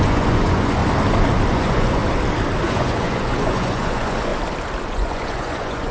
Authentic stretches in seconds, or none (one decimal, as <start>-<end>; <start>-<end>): 0.8-1.5; 2.0-2.6; 4.3-4.9